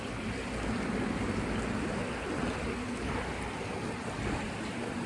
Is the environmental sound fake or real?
real